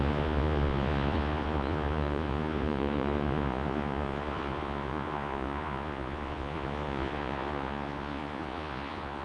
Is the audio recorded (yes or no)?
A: no